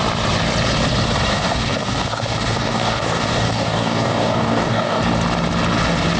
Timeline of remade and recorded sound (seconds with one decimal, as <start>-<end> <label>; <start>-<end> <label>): 0.0-1.3 recorded; 1.3-5.0 remade; 5.0-6.2 recorded